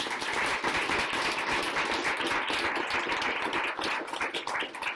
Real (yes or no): yes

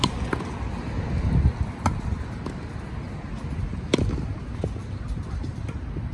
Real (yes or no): yes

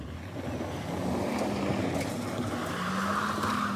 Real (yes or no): yes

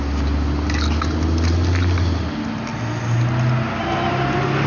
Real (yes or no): yes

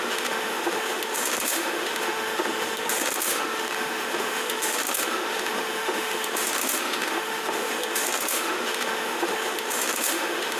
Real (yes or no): no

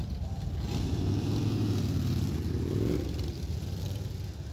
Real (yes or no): yes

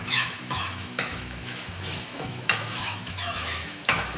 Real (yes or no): no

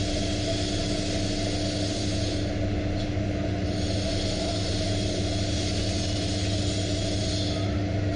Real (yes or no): yes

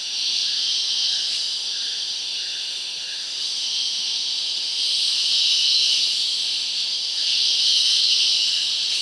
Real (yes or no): no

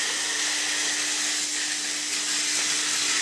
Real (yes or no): yes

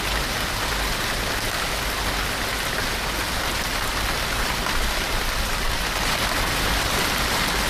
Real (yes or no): yes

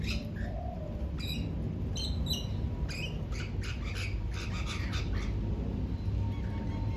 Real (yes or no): yes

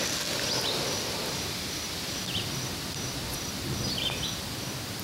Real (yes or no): yes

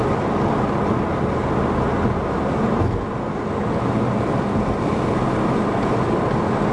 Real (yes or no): yes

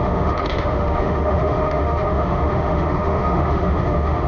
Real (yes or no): no